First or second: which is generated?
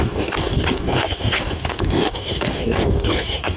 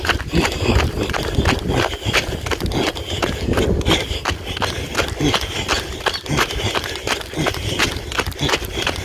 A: first